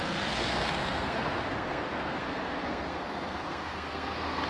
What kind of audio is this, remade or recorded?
remade